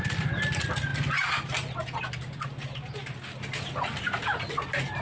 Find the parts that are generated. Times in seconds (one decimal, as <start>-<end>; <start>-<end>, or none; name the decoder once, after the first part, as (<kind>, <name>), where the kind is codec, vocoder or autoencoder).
none